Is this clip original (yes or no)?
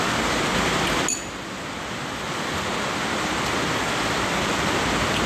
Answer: yes